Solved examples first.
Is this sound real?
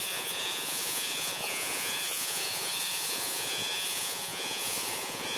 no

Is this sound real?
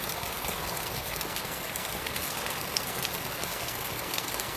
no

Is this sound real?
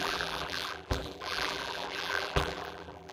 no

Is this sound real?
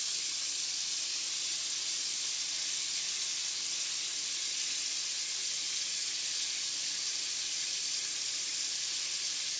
yes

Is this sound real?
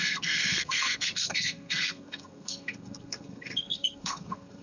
no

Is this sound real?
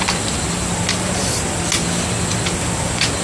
yes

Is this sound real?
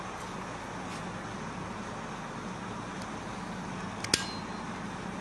yes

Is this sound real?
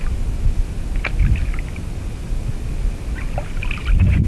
yes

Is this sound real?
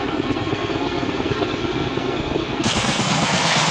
no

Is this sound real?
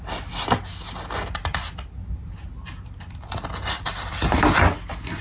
yes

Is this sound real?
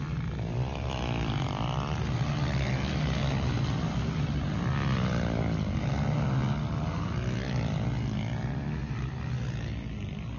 yes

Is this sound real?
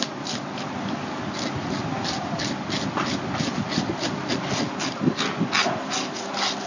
yes